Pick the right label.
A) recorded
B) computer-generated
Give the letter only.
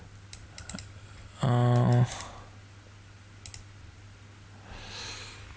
A